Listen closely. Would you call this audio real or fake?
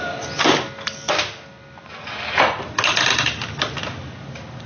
real